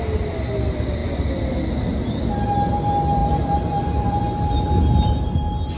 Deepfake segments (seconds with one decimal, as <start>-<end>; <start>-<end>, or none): none

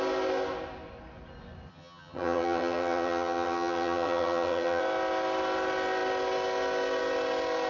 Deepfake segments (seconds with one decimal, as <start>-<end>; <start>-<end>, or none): 1.7-4.8

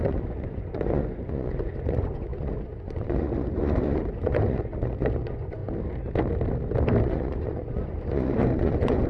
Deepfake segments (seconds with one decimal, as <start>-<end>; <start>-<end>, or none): 0.0-5.6; 7.0-9.1

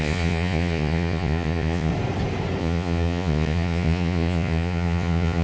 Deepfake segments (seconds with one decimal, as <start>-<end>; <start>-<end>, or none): 0.0-1.9; 2.6-5.4

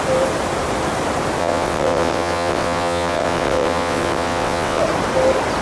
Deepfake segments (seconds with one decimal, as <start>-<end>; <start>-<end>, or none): 1.4-4.8

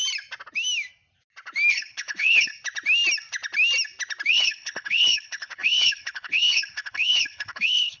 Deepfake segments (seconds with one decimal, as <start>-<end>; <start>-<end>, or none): 1.7-2.5; 4.3-8.0

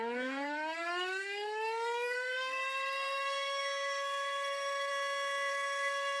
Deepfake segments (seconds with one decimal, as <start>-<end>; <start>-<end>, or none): 0.0-4.9; 5.5-6.2